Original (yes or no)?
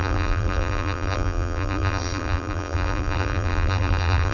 no